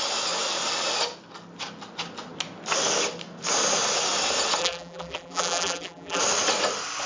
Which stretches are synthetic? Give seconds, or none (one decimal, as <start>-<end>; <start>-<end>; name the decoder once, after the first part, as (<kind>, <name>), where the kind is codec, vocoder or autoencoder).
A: 4.6-6.2 (vocoder, BigVGAN v2)